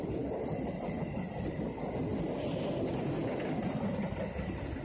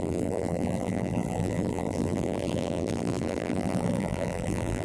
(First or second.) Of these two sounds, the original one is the first